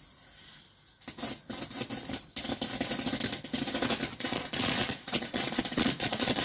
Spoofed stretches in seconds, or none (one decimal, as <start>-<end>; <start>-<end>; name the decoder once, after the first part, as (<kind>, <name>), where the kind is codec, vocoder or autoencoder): 4.1-6.4 (vocoder, Vocos)